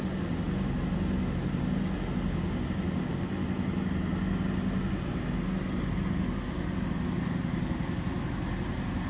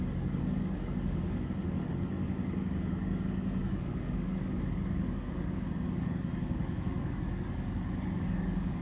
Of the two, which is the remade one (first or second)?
second